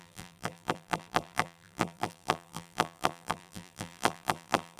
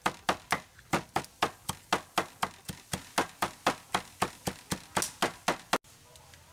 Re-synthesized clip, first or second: first